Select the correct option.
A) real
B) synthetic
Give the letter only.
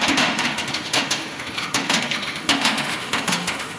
B